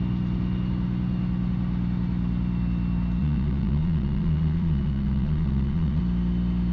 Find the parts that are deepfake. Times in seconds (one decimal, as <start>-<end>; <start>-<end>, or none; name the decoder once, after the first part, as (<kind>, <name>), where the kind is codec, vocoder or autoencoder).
3.2-6.0 (vocoder, Vocos)